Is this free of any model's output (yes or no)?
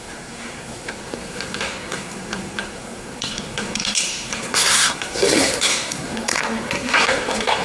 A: no